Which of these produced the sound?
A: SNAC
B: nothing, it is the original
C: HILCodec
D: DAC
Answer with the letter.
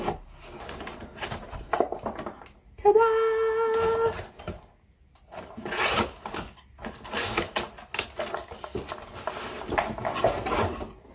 B